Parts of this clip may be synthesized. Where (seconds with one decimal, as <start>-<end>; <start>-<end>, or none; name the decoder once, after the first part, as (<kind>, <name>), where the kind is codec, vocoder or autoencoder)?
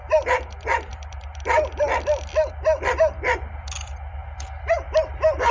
none